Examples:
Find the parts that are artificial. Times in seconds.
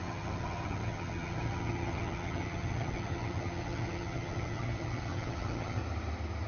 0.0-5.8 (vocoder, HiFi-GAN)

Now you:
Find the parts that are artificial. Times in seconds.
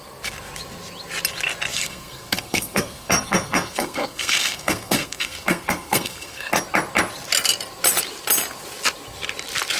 1.7-6.5 (codec, SNAC)